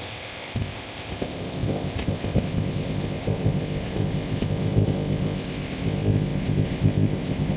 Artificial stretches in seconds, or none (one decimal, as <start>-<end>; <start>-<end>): 0.0-7.6